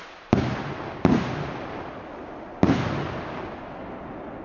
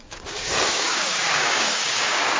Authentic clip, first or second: first